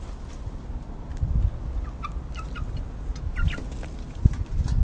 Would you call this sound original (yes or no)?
yes